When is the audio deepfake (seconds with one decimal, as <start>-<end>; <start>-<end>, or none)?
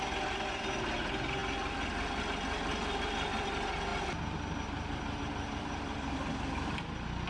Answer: none